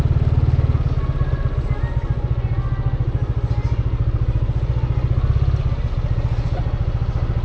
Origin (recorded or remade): recorded